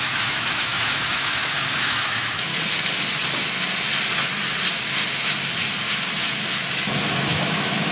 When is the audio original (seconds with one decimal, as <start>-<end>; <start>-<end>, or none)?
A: 2.5-7.2